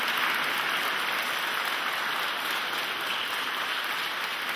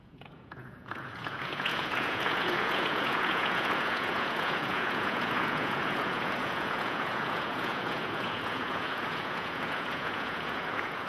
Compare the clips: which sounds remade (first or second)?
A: second